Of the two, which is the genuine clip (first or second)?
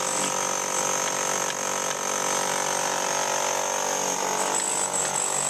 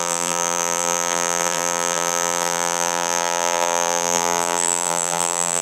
first